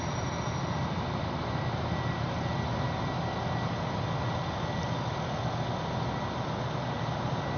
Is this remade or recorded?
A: recorded